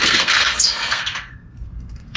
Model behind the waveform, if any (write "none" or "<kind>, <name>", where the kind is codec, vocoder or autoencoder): codec, SNAC